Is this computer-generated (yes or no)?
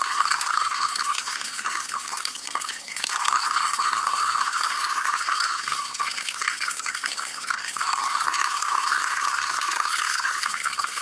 yes